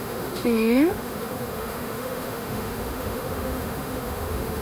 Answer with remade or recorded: remade